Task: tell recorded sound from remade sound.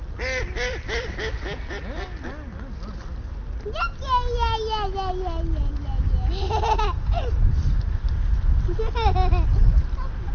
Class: recorded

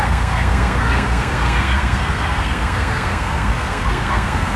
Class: remade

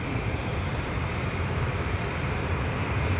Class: remade